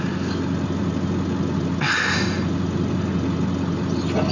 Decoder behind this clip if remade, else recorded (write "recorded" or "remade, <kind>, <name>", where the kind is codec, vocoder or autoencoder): recorded